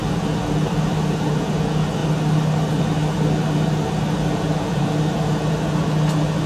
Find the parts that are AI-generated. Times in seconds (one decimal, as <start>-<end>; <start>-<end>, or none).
0.0-1.3; 2.0-5.5